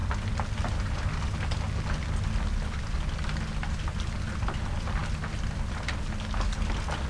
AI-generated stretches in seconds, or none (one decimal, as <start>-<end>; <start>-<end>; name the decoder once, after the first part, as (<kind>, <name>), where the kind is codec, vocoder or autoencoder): none